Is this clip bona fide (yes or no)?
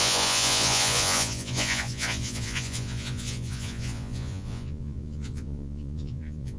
no